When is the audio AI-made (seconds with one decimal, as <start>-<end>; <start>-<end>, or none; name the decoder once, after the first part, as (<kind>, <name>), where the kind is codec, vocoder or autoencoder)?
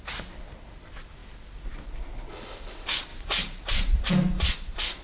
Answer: 3.1-4.1 (vocoder, BigVGAN v2)